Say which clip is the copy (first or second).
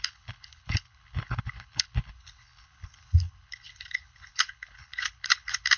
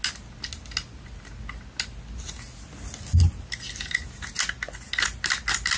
first